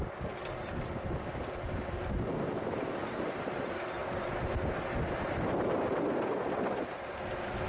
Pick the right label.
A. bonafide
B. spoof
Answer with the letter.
A